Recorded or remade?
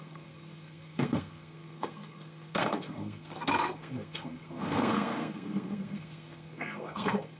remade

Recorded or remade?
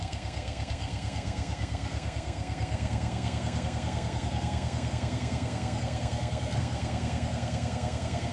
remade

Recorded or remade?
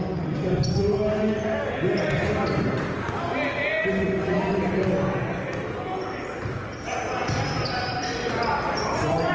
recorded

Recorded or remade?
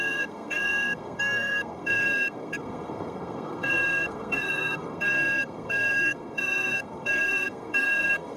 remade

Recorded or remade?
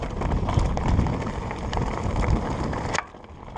recorded